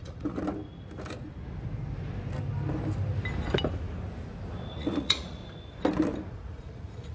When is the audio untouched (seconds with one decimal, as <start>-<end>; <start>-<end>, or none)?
0.4-4.7; 5.4-6.3